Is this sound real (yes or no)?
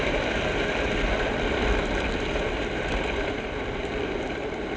yes